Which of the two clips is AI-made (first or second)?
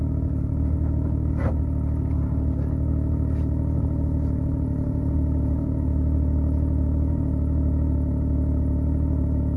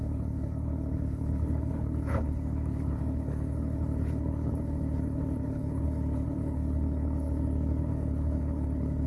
second